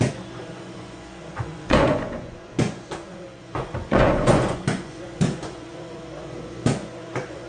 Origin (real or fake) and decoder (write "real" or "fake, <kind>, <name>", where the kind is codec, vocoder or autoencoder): fake, vocoder, Vocos